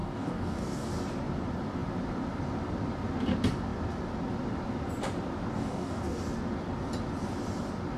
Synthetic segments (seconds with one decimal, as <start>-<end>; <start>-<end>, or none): 0.0-0.9; 5.5-6.2